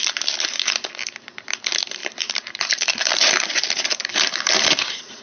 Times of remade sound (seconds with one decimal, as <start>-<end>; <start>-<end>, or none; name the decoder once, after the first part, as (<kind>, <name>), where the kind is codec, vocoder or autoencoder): 2.0-5.2 (vocoder, BigVGAN v2)